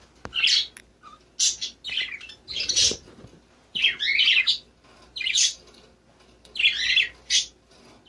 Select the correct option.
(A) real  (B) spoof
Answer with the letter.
A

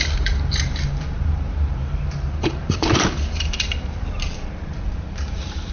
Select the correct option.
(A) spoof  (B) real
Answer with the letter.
A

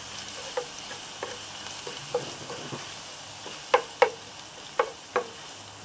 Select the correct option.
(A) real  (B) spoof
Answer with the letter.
A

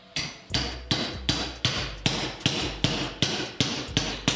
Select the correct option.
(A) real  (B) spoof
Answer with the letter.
A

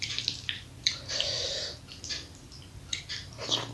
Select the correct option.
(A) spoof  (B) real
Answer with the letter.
B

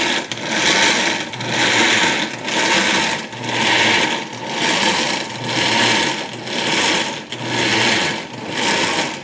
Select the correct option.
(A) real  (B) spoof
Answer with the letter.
A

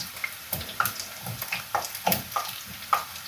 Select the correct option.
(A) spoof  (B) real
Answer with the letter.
A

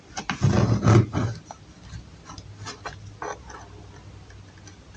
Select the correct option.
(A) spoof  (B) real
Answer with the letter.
B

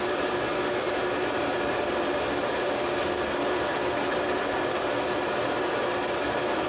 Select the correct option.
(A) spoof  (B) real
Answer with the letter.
B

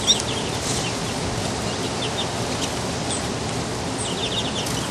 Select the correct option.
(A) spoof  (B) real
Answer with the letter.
B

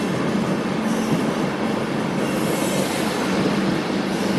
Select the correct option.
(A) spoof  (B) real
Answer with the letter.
B